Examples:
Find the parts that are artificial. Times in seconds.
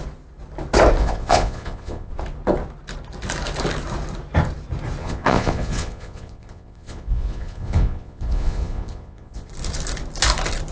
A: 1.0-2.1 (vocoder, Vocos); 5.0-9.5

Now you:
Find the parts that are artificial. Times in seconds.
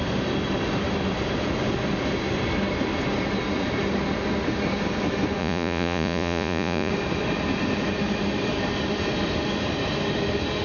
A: 5.4-6.9 (vocoder, Vocos)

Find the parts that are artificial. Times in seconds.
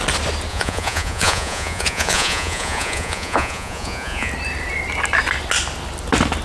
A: 0.5-4.3 (vocoder, Vocos)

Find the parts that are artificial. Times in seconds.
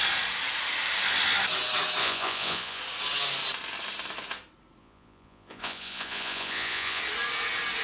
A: 2.0-2.8 (vocoder, Vocos); 4.8-7.0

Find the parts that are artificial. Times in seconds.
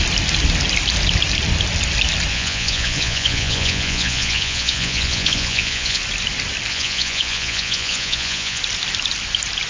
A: 2.3-6.0 (vocoder, Vocos); 6.7-8.6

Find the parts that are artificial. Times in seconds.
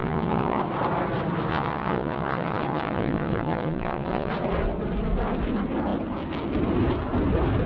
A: 0.0-0.6 (vocoder, Vocos); 1.5-4.3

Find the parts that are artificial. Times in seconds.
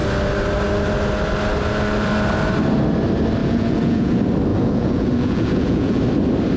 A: 3.4-4.1 (vocoder, Vocos); 4.5-6.0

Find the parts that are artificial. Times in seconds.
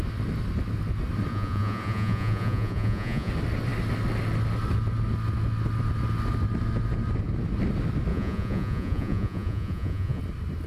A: 1.3-3.3 (vocoder, Vocos); 8.1-10.2